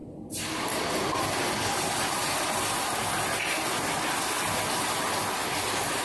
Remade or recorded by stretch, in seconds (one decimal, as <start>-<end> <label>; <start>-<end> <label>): 0.0-6.0 recorded